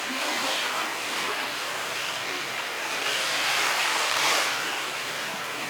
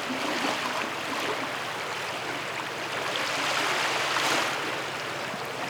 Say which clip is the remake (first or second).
first